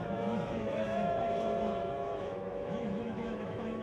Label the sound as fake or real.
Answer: fake